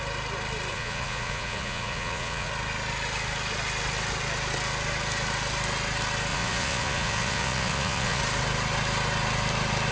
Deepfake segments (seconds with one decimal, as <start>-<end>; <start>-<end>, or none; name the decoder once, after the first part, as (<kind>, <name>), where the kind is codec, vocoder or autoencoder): 0.7-2.5 (vocoder, Vocos); 6.3-8.2